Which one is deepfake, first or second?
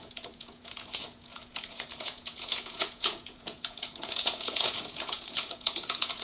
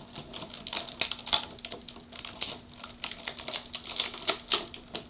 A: first